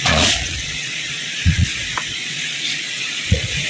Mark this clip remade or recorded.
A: remade